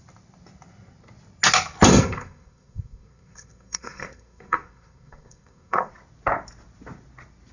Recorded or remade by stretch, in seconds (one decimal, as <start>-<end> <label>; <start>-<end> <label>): 0.0-1.9 recorded; 1.9-5.9 remade; 5.9-7.5 recorded